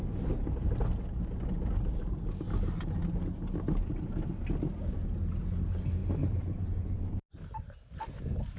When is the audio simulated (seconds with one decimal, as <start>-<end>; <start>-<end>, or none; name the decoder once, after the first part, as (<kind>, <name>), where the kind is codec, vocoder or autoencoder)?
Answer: none